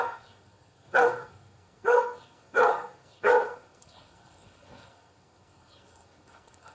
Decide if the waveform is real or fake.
fake